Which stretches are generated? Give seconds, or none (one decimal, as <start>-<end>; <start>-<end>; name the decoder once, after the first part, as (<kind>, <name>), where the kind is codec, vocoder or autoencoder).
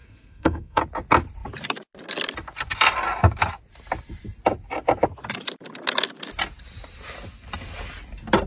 0.0-0.8 (codec, SNAC)